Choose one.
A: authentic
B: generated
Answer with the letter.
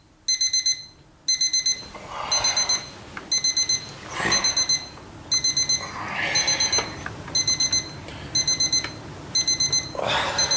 A